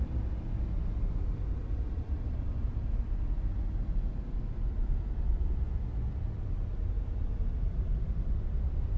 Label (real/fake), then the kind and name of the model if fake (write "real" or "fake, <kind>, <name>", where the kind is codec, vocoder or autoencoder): real